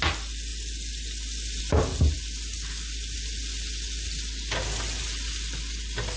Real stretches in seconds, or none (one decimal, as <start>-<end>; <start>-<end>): 0.0-6.2